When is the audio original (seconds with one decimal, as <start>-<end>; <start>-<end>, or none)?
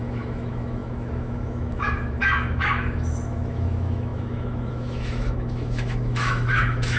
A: none